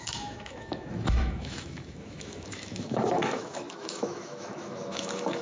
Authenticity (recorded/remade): remade